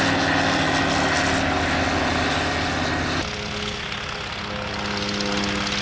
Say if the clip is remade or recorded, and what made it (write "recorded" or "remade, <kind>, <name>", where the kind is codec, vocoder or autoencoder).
recorded